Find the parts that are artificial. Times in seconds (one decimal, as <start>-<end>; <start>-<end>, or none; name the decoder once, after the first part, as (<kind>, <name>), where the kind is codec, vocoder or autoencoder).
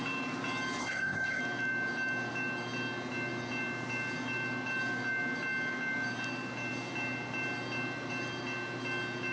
0.8-1.4 (codec, ZipCodec)